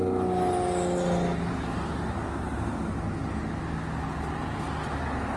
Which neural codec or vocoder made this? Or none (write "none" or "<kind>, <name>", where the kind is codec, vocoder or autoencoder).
none